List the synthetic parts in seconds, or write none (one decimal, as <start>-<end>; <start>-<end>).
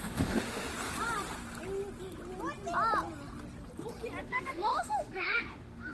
0.0-0.7; 4.2-5.9